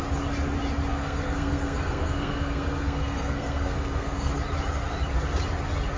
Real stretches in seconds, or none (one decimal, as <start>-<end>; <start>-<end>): 0.0-0.9; 4.3-6.0